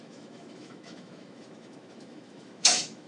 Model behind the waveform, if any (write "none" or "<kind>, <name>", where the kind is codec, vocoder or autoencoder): autoencoder, DAC-VAE